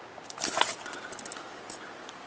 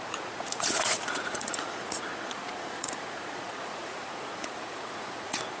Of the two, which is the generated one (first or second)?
second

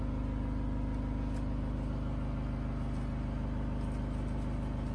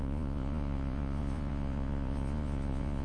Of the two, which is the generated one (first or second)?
second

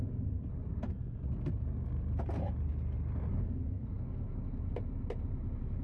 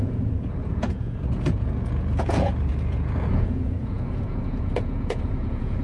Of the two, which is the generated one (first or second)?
second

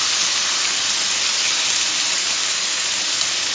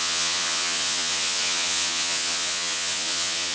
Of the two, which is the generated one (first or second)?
second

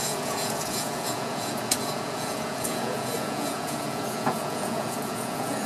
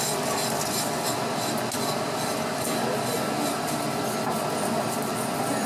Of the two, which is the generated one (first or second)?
first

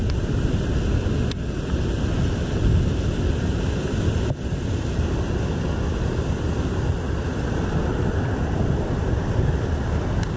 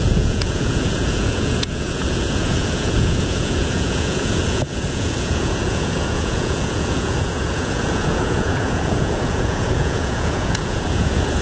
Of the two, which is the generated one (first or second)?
second